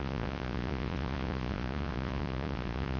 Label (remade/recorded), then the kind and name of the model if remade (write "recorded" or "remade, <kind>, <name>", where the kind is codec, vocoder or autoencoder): remade, vocoder, Vocos